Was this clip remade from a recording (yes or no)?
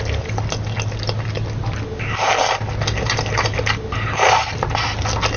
no